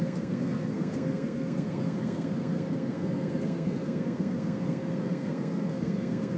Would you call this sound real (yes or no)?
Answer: no